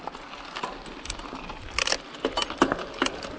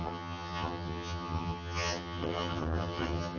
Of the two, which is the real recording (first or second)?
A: first